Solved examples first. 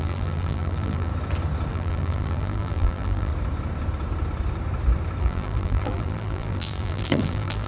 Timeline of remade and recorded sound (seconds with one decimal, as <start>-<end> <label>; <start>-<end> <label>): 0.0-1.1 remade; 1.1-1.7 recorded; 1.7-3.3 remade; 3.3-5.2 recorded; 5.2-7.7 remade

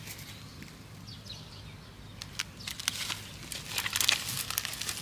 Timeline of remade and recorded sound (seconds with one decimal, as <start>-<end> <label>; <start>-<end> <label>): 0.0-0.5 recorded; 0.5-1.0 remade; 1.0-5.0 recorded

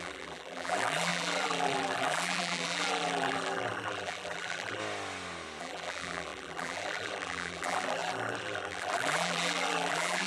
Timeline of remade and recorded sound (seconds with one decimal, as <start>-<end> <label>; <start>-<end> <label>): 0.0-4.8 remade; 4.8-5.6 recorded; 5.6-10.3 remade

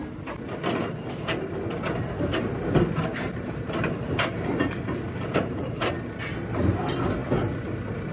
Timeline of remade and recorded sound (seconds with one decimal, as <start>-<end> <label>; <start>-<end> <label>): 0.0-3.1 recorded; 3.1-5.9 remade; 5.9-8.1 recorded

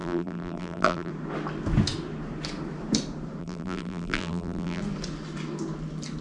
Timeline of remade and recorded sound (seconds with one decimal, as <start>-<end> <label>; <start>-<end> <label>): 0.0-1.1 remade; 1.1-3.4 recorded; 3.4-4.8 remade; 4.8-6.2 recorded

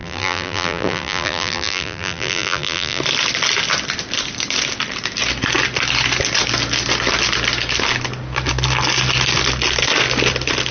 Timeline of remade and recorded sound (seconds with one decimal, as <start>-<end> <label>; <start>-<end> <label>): 0.0-3.0 remade; 3.0-10.7 recorded

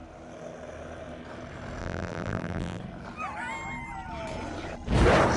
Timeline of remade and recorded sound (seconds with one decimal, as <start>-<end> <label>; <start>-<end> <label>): 0.0-1.8 recorded; 1.8-2.8 remade; 2.8-5.4 recorded